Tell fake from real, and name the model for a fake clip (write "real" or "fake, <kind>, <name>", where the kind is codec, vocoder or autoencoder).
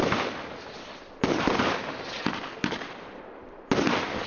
real